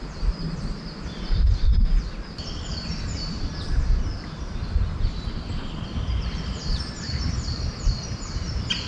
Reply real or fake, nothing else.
real